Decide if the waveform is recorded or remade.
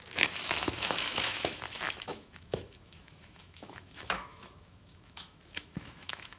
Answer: remade